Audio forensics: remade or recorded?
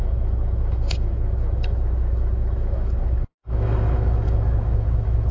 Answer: remade